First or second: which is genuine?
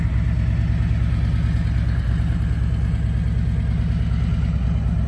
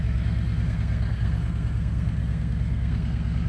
first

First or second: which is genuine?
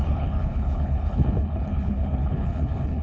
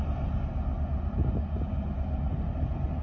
second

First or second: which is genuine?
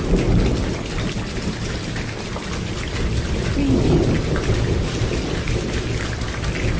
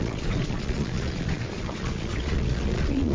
first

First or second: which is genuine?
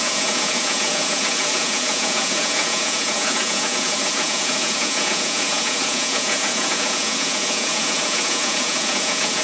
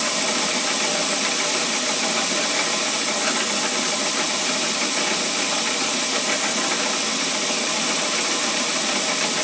second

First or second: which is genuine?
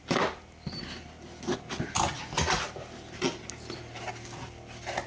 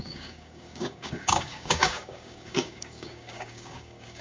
first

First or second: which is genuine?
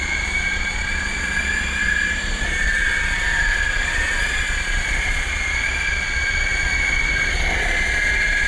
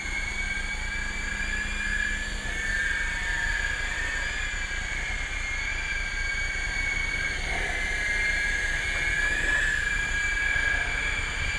second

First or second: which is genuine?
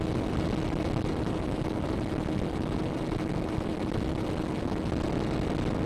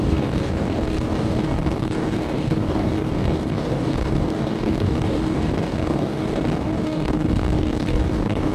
first